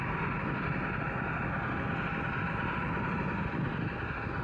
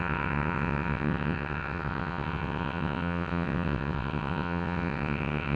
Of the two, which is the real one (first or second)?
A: first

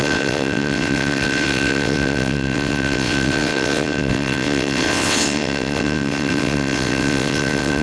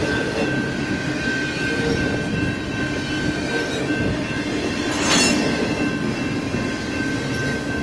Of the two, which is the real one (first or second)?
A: second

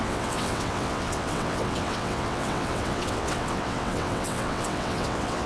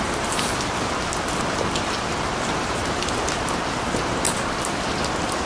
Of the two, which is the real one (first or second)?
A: second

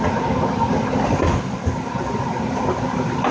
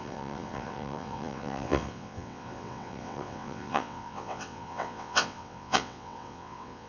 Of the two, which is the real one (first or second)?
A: first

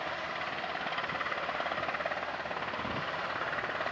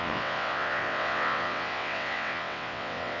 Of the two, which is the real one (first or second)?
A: first